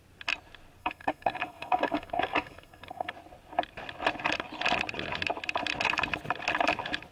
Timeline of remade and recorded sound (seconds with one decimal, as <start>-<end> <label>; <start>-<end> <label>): 0.0-0.8 recorded; 0.8-3.1 remade; 3.1-7.1 recorded